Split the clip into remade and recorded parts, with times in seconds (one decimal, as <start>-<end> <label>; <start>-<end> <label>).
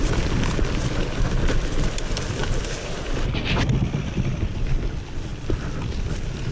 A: 0.0-6.5 recorded